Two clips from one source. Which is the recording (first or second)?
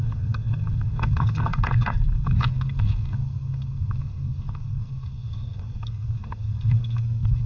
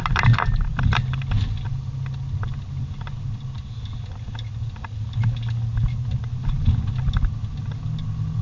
second